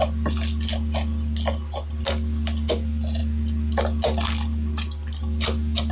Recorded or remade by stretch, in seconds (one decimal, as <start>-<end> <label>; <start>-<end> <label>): 0.0-5.9 recorded